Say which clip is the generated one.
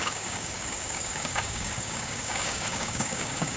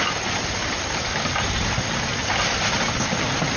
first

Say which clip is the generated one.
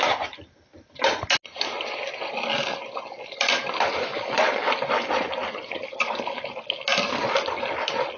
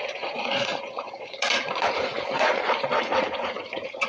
second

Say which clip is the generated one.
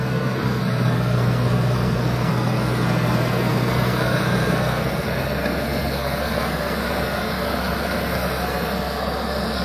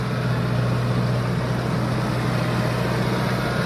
first